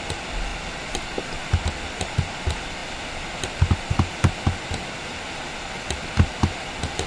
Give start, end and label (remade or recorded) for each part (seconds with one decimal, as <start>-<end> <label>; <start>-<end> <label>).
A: 0.0-7.1 recorded